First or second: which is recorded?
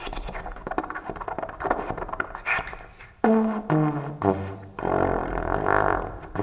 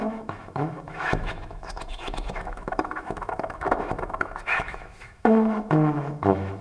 first